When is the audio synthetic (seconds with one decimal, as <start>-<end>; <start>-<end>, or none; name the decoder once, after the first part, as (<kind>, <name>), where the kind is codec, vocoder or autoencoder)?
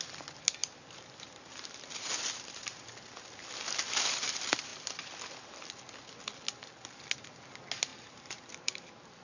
0.6-2.6 (vocoder, BigVGAN v2); 7.9-9.2